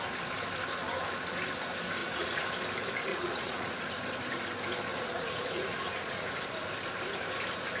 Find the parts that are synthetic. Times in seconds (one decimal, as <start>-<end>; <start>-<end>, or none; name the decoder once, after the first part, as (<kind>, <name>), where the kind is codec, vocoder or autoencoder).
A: 2.0-2.5 (vocoder, Vocos); 3.1-4.0; 4.9-6.4